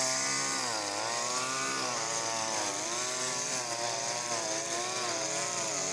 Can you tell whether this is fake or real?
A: real